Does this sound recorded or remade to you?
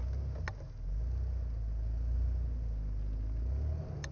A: recorded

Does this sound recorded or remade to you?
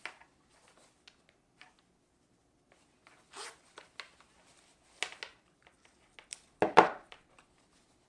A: recorded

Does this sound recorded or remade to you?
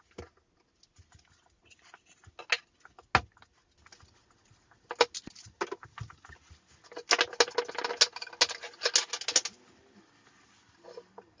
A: recorded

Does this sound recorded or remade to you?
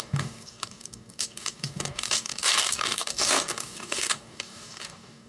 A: remade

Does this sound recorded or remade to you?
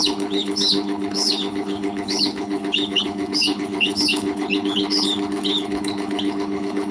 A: remade